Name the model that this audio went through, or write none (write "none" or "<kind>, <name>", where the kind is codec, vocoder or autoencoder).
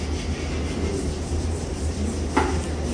none